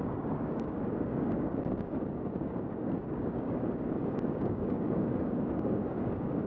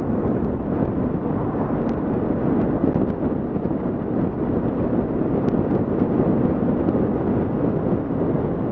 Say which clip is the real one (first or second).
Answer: second